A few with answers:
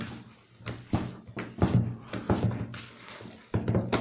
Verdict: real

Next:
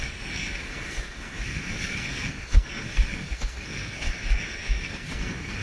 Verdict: fake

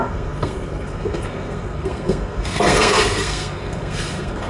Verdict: fake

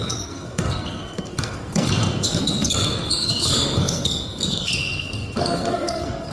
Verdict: fake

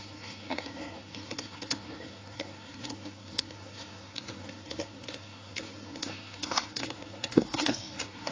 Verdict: fake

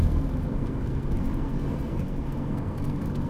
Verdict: fake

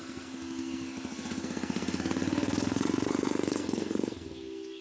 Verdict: fake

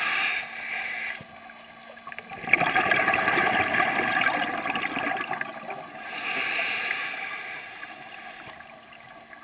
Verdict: real